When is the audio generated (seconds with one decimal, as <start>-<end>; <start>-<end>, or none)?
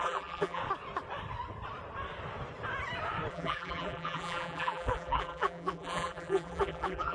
0.0-0.6; 3.3-7.1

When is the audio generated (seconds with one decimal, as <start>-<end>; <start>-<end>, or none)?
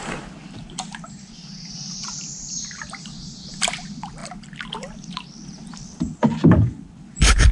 0.0-1.5; 2.4-7.5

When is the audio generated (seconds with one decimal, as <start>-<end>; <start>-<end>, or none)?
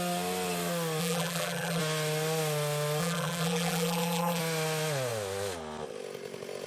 1.0-1.8; 3.0-4.4